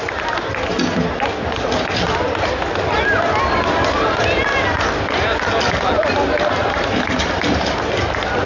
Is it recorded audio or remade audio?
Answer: recorded